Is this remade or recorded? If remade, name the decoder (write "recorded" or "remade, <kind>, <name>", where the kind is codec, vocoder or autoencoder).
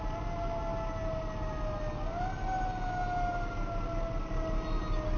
recorded